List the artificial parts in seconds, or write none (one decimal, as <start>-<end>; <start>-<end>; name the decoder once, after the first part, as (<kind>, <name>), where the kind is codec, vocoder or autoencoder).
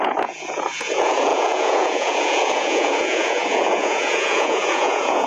0.0-5.3 (vocoder, Vocos)